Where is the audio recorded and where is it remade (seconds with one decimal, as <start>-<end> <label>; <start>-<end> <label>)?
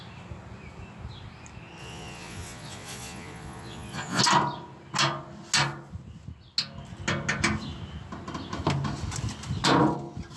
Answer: 0.0-1.8 recorded; 1.8-4.2 remade; 4.2-10.4 recorded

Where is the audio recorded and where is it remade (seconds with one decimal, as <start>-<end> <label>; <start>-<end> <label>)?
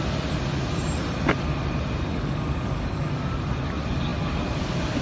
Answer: 0.0-2.1 recorded; 2.1-3.1 remade; 3.1-5.0 recorded